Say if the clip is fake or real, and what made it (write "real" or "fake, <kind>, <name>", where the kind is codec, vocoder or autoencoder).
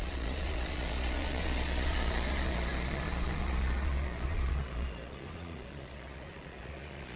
fake, vocoder, Vocos